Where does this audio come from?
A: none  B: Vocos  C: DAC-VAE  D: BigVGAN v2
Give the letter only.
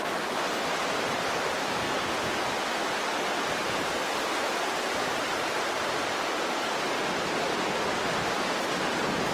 A